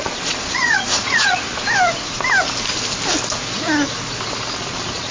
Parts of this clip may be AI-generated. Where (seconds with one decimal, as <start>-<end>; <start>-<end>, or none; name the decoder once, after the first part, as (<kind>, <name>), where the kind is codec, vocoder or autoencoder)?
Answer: 0.0-1.5 (vocoder, Vocos); 4.6-5.1